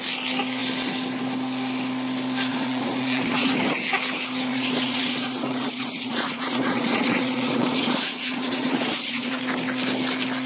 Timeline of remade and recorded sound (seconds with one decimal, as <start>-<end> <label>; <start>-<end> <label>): 0.0-2.5 recorded; 2.5-3.5 remade; 3.5-4.5 recorded; 4.5-9.4 remade; 9.4-10.5 recorded